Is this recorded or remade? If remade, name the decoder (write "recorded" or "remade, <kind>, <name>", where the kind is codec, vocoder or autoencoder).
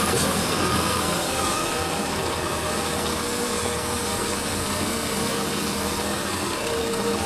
remade, codec, SNAC